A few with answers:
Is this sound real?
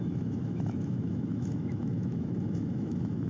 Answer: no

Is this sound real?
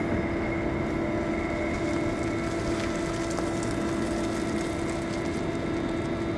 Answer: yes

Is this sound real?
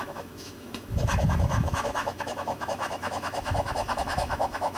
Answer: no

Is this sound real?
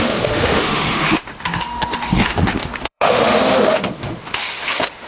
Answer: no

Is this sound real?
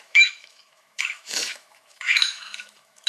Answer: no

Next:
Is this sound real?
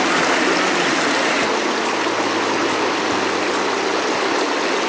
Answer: yes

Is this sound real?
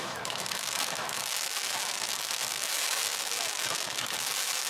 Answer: no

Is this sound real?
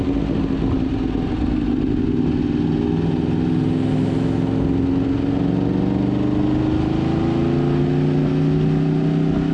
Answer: yes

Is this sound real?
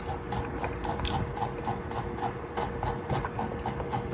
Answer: yes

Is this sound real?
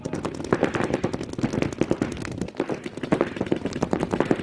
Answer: yes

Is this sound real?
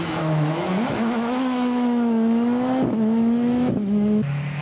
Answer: no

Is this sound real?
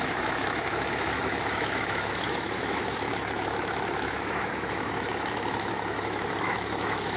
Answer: no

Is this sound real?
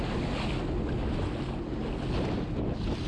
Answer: yes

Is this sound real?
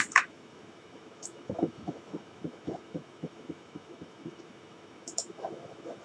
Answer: no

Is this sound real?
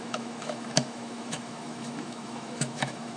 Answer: no